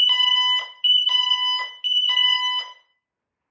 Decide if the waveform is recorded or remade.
recorded